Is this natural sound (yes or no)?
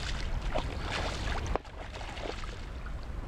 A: yes